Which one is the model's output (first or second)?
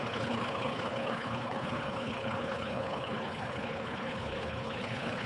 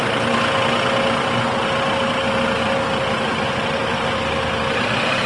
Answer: first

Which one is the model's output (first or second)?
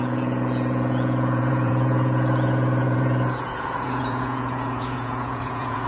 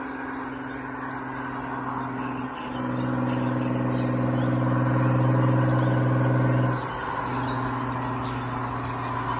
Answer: first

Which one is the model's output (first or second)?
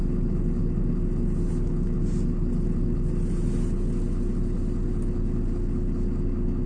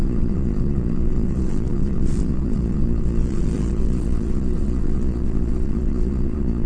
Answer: second